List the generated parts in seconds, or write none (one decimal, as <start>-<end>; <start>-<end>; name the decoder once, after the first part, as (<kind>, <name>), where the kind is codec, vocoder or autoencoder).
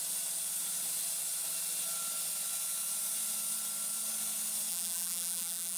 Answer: 4.7-5.8 (vocoder, BigVGAN v2)